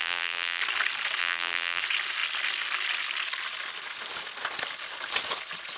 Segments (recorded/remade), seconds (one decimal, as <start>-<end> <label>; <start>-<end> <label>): 0.0-0.6 remade; 0.6-1.2 recorded; 1.2-1.8 remade; 1.8-5.8 recorded